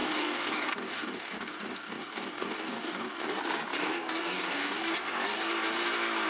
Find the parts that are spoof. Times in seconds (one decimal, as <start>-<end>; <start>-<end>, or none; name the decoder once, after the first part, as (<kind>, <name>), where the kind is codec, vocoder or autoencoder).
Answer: 0.0-3.4 (codec, DAC); 3.8-4.9